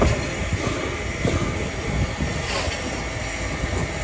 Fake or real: real